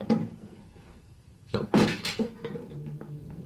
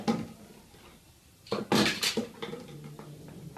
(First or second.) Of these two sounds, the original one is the second